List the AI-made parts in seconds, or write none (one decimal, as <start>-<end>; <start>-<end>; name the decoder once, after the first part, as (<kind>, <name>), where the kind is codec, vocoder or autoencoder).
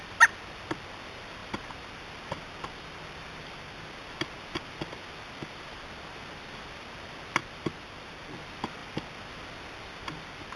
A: none